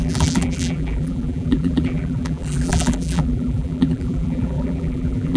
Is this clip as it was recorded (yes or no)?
no